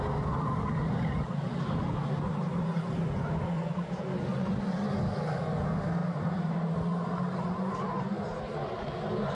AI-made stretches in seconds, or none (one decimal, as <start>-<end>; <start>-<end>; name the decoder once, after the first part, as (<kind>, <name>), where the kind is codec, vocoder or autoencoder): 6.0-6.5 (vocoder, BigVGAN v2)